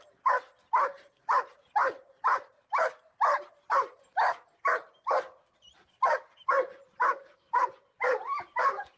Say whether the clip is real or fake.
real